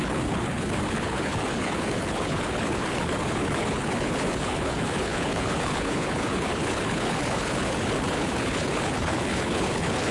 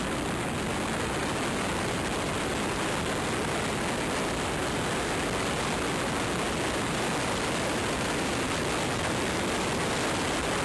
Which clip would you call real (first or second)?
second